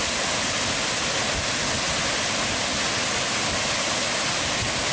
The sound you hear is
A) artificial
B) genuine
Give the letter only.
B